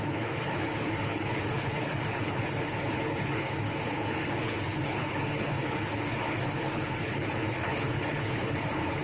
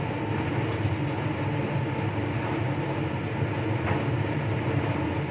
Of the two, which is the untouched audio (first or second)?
second